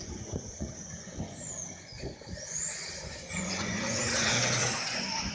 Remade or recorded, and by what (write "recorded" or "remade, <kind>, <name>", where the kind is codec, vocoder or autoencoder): remade, vocoder, Vocos